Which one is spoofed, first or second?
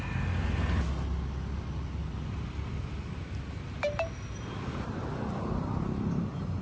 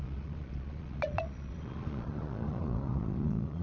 second